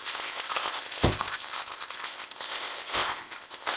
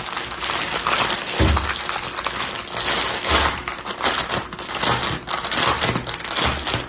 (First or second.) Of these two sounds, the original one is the second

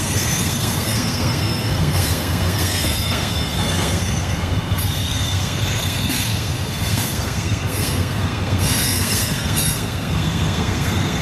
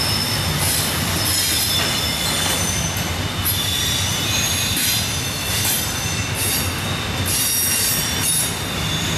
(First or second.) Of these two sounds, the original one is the second